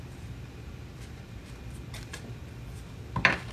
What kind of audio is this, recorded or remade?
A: remade